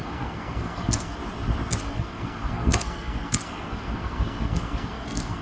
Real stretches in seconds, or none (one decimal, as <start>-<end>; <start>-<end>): 1.2-1.8